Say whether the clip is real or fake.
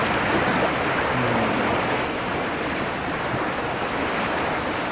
real